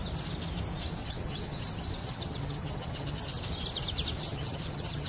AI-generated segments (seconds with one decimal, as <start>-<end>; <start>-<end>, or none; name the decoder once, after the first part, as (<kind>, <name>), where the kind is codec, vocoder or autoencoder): 1.0-1.6 (vocoder, HiFi-GAN); 2.0-3.2; 4.2-5.1